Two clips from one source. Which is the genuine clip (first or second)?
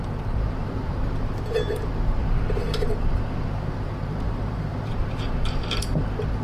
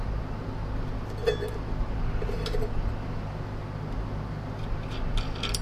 second